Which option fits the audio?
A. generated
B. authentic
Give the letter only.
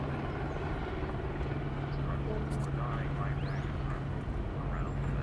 B